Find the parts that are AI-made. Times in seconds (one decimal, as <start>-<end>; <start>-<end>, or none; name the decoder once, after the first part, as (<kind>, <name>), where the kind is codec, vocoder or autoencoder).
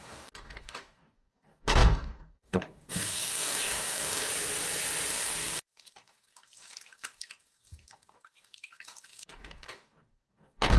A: 0.0-4.3 (codec, DAC); 5.1-10.8